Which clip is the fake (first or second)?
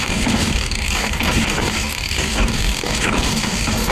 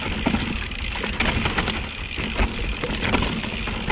first